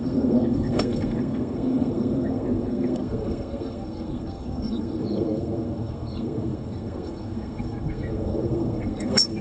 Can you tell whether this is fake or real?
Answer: fake